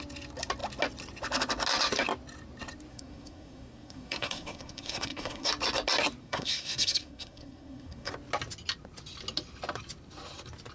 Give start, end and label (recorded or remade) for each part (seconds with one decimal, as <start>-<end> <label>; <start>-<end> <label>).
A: 0.0-2.9 recorded; 2.9-5.5 remade; 5.5-6.2 recorded; 6.2-8.1 remade; 8.1-10.7 recorded